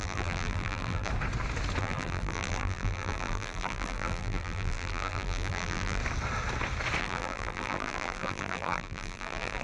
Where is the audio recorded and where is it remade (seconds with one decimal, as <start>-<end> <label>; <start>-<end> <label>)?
0.0-1.1 remade; 1.1-1.8 recorded; 1.8-6.0 remade; 6.0-7.0 recorded; 7.0-9.6 remade